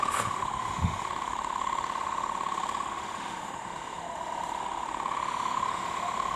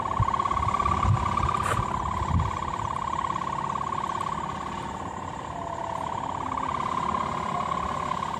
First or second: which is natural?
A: second